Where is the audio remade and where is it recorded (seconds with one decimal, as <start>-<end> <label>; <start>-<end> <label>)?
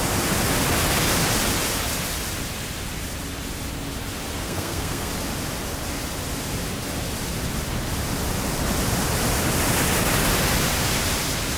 0.0-4.3 recorded; 4.3-5.1 remade; 5.1-11.6 recorded